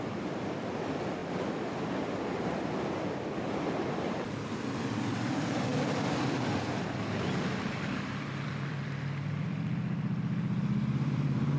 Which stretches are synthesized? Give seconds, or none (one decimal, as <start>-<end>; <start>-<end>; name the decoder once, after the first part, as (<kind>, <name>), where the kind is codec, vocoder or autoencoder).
0.0-1.2 (vocoder, BigVGAN v2); 4.0-11.6